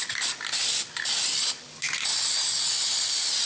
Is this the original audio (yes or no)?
yes